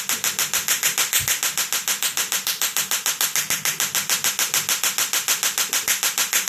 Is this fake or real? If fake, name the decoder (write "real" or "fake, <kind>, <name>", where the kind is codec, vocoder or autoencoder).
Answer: real